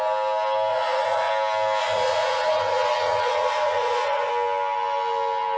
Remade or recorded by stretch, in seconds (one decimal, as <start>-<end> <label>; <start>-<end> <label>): 0.0-0.7 recorded; 0.7-1.3 remade; 1.3-1.8 recorded; 1.8-4.3 remade; 4.3-5.6 recorded